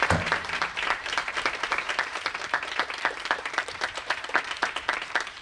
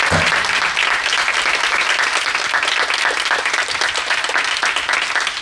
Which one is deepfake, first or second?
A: first